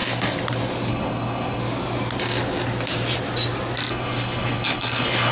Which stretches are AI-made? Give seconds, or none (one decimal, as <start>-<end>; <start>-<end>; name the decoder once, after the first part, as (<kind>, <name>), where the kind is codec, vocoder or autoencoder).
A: 0.9-1.6 (codec, HILCodec); 3.9-5.3